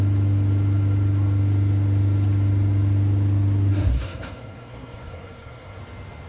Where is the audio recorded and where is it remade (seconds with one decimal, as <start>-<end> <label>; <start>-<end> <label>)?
0.0-3.7 recorded; 3.7-5.8 remade; 5.8-6.3 recorded